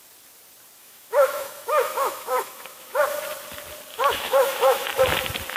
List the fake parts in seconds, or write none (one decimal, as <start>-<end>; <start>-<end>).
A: 0.8-3.0; 3.9-5.0